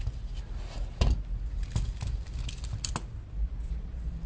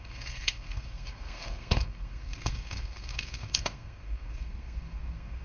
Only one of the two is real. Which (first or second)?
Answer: first